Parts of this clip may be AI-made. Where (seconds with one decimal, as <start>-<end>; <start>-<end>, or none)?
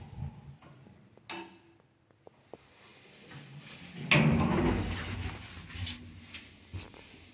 none